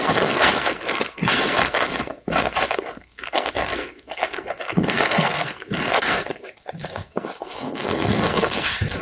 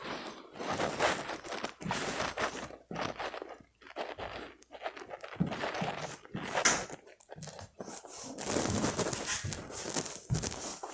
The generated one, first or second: first